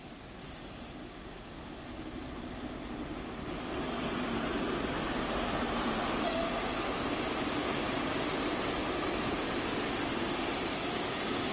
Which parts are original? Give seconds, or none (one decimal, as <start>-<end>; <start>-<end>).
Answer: 0.0-7.6; 8.3-11.5